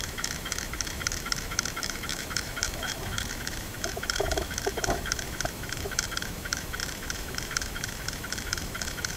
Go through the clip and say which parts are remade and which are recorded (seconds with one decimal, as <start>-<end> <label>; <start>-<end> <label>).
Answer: 0.0-9.2 remade